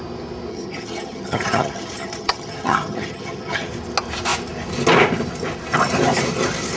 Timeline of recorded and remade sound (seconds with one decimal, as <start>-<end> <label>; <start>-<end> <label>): 0.0-0.5 recorded; 0.5-3.7 remade; 3.7-6.8 recorded